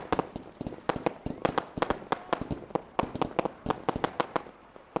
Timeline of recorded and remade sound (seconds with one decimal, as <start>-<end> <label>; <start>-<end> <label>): 0.0-5.0 recorded